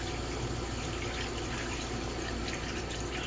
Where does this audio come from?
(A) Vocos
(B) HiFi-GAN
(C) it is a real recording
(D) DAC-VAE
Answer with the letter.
C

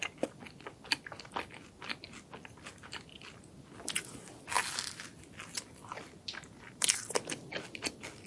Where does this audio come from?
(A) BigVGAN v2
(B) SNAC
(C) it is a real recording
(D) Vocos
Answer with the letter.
C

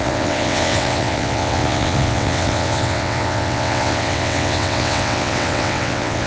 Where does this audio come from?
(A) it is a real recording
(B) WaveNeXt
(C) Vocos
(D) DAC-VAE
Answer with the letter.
B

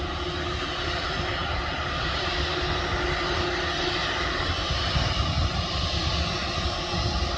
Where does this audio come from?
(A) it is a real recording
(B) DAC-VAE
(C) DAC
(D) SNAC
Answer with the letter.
A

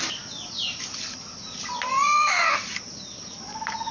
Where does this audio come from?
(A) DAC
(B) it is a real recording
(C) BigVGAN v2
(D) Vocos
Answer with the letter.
B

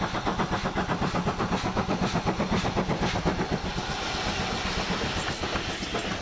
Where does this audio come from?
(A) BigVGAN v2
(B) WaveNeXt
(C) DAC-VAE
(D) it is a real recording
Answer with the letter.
D